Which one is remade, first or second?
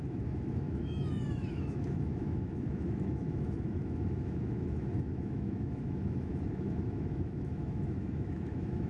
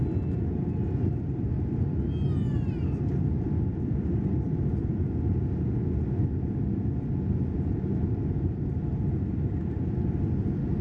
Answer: first